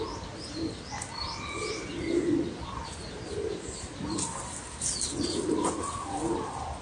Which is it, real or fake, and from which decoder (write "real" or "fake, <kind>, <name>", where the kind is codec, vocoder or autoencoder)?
real